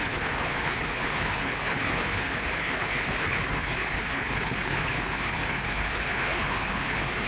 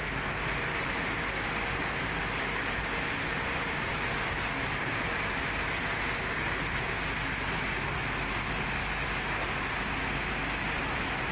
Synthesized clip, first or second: first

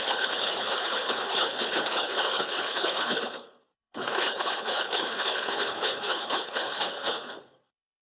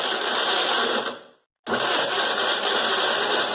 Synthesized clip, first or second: first